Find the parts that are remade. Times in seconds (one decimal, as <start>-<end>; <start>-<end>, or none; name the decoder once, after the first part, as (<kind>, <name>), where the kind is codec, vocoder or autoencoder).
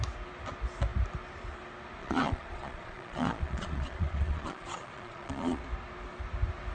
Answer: 2.0-5.6 (vocoder, Vocos)